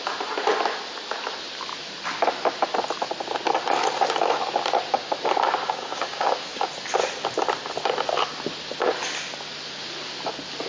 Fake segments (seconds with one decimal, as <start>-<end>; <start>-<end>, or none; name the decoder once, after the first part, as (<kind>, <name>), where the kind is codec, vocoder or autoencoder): 5.6-6.7 (codec, DAC)